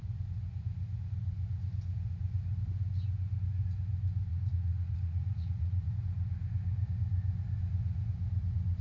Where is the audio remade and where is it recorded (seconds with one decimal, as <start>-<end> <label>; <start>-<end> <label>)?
0.0-4.3 recorded; 4.3-5.9 remade; 5.9-8.8 recorded